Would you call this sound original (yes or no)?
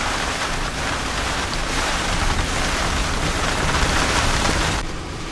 no